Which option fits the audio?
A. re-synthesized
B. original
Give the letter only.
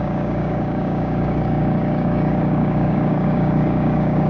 A